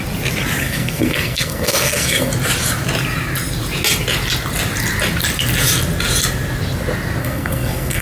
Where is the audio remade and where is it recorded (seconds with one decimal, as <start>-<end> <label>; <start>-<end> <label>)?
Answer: 0.0-0.6 recorded; 0.6-2.3 remade; 2.3-7.2 recorded; 7.2-8.0 remade